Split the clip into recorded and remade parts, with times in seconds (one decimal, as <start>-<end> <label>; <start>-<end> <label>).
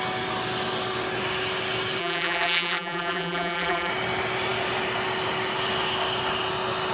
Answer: 0.0-2.0 recorded; 2.0-3.9 remade; 3.9-6.9 recorded